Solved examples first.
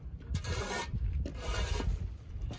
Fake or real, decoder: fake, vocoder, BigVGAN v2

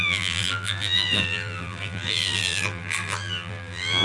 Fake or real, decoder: fake, vocoder, BigVGAN v2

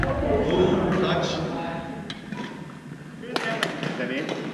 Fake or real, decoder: real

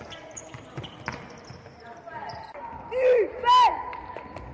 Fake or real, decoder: real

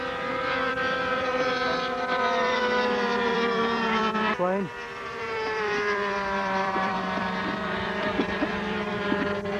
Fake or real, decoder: fake, vocoder, BigVGAN v2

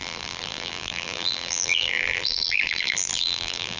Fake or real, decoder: fake, vocoder, BigVGAN v2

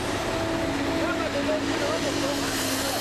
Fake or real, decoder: real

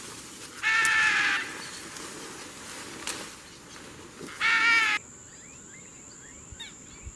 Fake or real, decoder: real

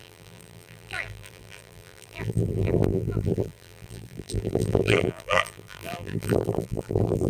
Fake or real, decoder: fake, vocoder, BigVGAN v2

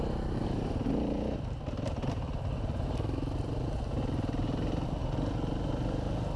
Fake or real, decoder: real